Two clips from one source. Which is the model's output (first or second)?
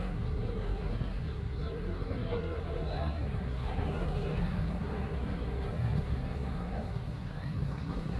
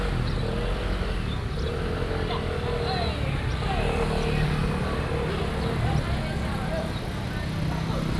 first